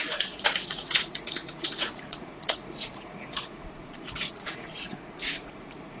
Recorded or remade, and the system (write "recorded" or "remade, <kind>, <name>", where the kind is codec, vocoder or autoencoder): remade, vocoder, Vocos